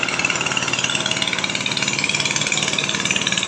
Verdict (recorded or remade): recorded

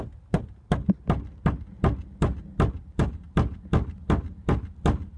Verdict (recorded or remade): recorded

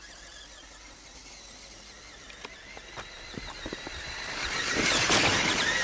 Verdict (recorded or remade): recorded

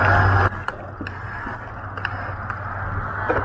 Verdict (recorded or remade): recorded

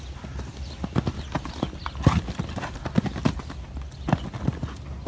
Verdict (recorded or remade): recorded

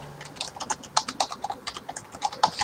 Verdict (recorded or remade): recorded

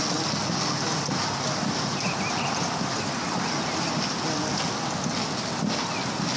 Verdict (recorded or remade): recorded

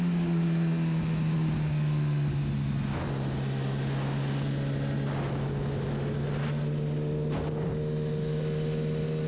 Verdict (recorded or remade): recorded